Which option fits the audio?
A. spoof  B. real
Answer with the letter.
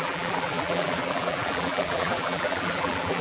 A